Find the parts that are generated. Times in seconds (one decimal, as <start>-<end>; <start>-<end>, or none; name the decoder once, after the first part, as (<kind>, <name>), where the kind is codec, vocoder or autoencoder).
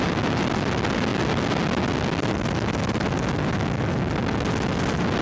none